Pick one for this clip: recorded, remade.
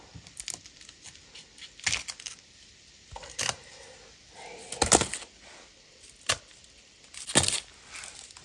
recorded